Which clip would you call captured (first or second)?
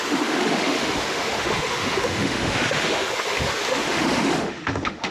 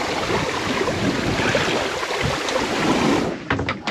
second